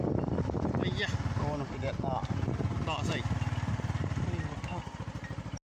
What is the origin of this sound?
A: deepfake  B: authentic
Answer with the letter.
B